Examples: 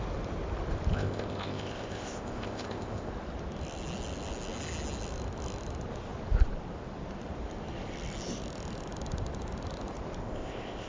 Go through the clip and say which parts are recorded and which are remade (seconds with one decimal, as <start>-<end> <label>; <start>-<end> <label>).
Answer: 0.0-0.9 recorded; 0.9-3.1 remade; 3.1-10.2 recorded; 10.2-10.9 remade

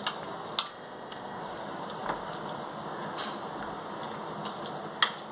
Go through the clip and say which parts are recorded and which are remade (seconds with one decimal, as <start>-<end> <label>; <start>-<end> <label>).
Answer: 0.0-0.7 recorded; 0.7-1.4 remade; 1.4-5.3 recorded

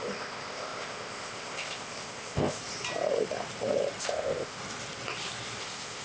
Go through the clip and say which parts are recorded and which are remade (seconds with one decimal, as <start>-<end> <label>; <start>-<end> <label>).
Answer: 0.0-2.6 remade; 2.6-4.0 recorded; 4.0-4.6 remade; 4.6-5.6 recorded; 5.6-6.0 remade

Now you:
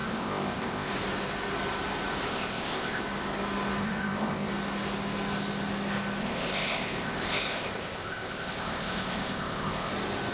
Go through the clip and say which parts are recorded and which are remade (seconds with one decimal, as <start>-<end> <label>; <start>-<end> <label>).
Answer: 0.0-0.9 remade; 0.9-2.3 recorded; 2.3-3.0 remade; 3.0-3.8 recorded; 3.8-4.5 remade; 4.5-6.2 recorded; 6.2-9.9 remade; 9.9-10.3 recorded

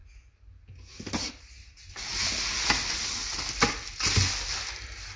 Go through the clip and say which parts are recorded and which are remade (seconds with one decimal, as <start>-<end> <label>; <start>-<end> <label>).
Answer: 0.0-5.2 recorded

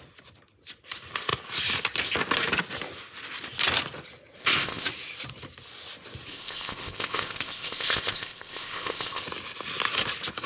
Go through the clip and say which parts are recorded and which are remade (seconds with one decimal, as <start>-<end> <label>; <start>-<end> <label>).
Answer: 0.0-4.4 recorded; 4.4-4.9 remade; 4.9-6.3 recorded; 6.3-9.2 remade; 9.2-10.5 recorded

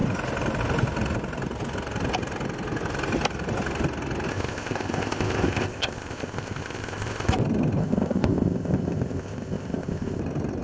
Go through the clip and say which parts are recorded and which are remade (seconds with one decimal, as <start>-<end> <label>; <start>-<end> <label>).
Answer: 0.0-4.3 recorded; 4.3-7.3 remade; 7.3-7.8 recorded; 7.8-10.2 remade; 10.2-10.6 recorded

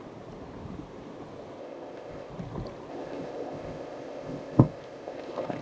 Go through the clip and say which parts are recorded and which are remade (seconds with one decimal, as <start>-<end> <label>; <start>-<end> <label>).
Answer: 0.0-1.6 recorded; 1.6-2.3 remade; 2.3-2.9 recorded; 2.9-5.6 remade